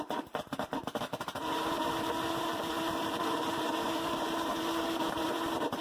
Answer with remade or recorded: remade